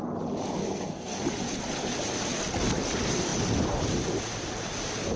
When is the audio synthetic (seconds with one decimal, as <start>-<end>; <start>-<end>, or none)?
0.6-1.2